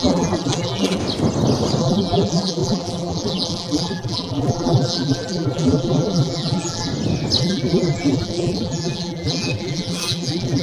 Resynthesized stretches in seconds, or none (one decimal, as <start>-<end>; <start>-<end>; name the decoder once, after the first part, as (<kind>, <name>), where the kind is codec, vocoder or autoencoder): 0.0-1.0 (vocoder, BigVGAN v2); 1.8-6.9; 7.4-10.6